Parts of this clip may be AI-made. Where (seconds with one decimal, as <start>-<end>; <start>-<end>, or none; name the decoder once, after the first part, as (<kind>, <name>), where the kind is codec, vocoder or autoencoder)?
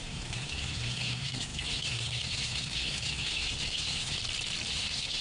0.0-4.2 (codec, SNAC); 4.7-5.2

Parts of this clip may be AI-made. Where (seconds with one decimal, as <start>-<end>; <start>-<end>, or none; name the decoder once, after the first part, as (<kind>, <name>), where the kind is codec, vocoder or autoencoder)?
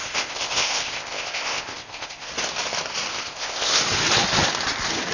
0.0-2.3 (codec, ZipCodec); 3.1-3.8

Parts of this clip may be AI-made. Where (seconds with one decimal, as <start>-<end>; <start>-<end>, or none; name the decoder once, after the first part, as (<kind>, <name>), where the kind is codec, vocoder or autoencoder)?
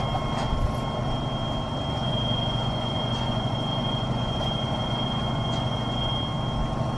2.0-6.2 (vocoder, Vocos)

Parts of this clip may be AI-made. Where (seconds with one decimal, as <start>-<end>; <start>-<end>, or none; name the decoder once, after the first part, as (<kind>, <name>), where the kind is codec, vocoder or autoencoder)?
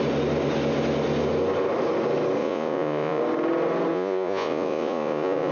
2.4-3.2 (vocoder, Vocos); 3.9-5.5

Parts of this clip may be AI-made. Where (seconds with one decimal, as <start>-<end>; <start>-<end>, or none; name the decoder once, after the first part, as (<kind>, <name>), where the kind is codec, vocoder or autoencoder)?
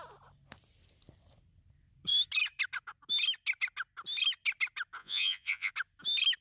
5.0-5.7 (vocoder, Vocos)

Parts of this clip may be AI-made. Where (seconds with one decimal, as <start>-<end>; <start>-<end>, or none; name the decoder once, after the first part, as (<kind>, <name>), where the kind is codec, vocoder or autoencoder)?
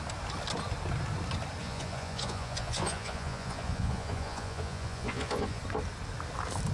1.6-5.6 (vocoder, Vocos)